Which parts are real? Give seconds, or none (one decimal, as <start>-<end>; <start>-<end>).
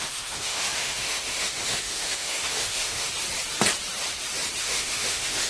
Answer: 3.1-4.6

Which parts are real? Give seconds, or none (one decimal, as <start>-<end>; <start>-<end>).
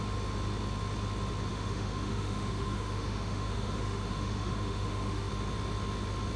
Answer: 0.0-1.5; 5.3-6.4